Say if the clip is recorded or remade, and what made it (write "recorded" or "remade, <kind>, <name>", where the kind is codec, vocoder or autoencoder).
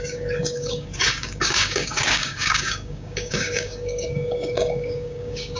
remade, codec, DAC